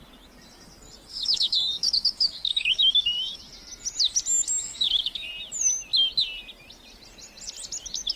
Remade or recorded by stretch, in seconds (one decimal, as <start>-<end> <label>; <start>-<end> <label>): 0.0-1.1 recorded; 1.1-3.4 remade; 3.4-4.6 recorded; 4.6-5.3 remade; 5.3-8.2 recorded